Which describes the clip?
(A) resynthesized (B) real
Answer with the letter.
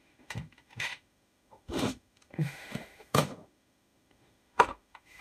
A